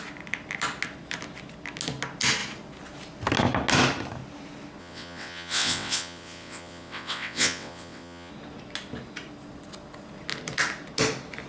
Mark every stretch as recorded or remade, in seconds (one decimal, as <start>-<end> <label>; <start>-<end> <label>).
0.0-4.8 recorded; 4.8-8.3 remade; 8.3-11.5 recorded